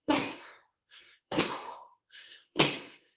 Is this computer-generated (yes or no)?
yes